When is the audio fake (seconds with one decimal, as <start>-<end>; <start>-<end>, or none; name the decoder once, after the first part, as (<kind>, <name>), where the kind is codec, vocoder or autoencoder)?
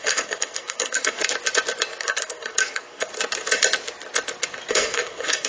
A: 0.0-1.2 (codec, SNAC); 2.0-3.1; 4.7-5.5